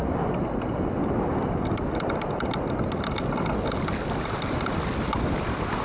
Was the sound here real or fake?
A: real